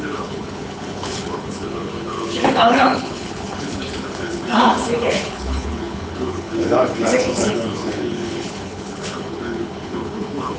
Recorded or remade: remade